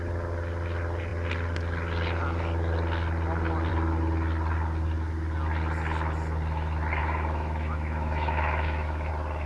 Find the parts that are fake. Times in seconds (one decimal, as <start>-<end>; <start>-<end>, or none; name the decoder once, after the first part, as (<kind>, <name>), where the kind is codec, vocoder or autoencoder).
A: 7.0-9.1 (autoencoder, DAC-VAE)